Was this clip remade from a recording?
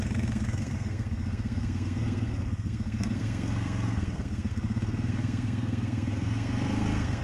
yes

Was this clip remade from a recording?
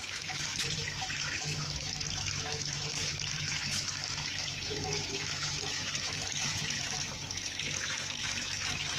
yes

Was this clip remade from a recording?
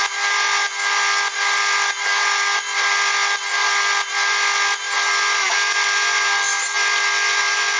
no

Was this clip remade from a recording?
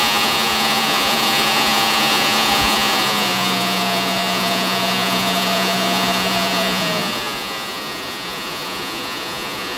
yes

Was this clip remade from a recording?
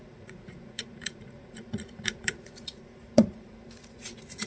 yes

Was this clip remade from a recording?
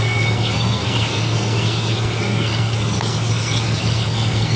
yes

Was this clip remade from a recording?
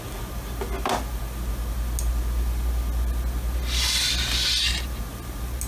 no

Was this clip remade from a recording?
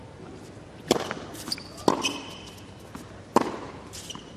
no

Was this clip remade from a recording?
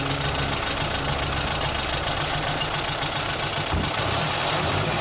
no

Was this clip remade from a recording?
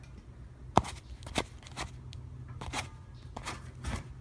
no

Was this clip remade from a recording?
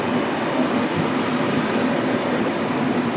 no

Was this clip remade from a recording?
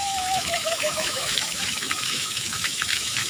yes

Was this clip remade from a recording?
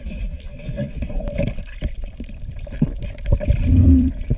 yes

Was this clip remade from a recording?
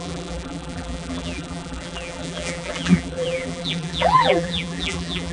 yes